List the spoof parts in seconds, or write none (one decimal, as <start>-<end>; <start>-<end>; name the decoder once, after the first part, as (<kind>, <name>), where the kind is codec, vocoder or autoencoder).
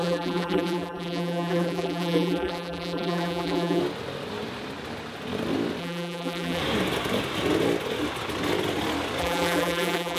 0.0-3.8 (vocoder, BigVGAN v2); 5.8-6.6; 9.2-10.2